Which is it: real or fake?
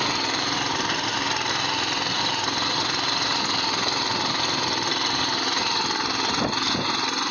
real